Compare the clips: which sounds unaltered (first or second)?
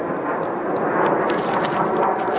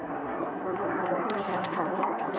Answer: first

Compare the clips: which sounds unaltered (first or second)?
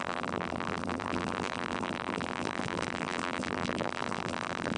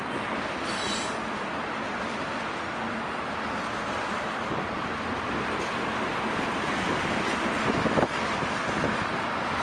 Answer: second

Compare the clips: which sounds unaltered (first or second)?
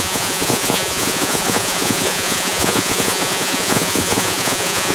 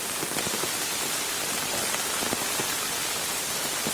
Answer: second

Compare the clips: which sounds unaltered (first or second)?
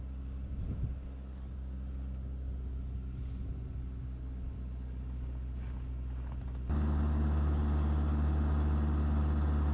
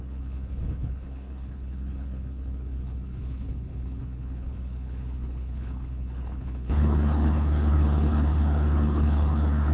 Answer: first